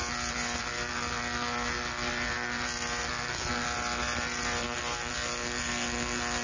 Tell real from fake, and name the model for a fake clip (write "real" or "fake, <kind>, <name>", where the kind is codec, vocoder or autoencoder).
real